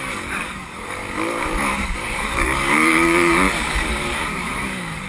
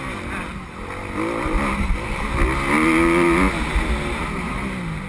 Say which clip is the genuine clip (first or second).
second